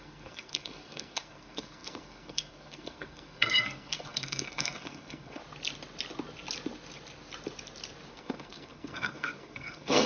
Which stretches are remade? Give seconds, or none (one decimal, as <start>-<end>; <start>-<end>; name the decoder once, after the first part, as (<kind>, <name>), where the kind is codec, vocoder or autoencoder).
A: 0.0-5.4 (codec, SNAC); 8.1-10.1